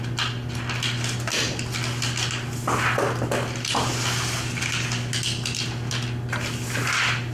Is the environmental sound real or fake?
real